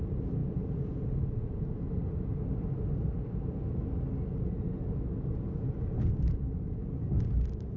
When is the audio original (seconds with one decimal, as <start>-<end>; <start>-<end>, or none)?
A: 0.0-7.8